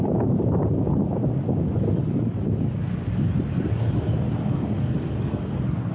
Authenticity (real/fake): real